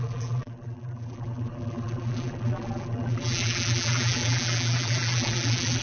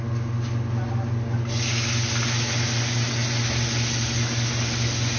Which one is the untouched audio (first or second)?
second